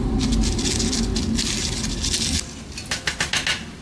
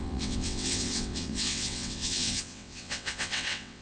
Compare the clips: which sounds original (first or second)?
first